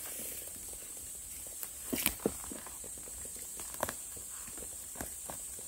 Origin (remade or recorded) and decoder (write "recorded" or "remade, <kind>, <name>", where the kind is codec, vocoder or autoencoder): remade, vocoder, BigVGAN v2